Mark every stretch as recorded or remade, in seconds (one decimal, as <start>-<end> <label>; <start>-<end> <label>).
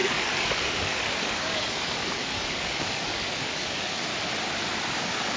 0.0-4.1 remade; 4.1-5.0 recorded; 5.0-5.4 remade